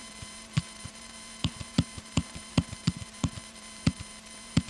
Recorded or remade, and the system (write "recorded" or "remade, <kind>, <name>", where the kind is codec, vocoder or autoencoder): remade, vocoder, BigVGAN v2